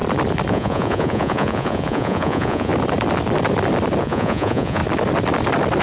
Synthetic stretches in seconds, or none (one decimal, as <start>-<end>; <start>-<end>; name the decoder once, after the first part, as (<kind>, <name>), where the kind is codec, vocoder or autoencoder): 0.5-2.7 (vocoder, Vocos); 4.0-4.8